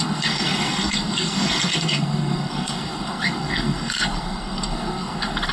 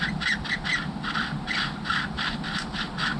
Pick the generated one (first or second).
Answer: first